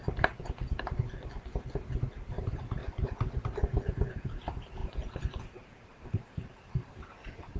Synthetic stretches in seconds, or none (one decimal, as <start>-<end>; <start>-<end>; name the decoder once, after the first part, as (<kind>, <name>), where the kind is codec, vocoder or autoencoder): 0.0-1.2 (vocoder, BigVGAN v2); 2.3-2.8; 3.8-7.6